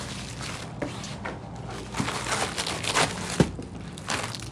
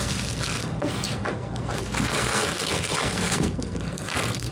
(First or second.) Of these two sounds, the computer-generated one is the second